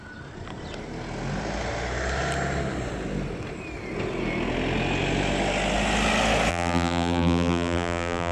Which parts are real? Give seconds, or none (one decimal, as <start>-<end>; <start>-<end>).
0.0-6.5